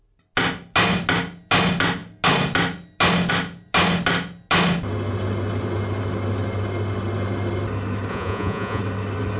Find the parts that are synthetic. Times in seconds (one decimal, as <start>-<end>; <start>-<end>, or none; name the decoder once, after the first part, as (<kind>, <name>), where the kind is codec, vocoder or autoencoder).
8.1-8.8 (vocoder, Vocos)